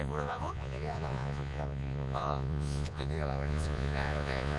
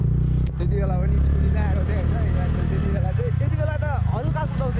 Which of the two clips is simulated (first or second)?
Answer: first